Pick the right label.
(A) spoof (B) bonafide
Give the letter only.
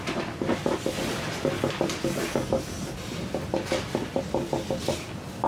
A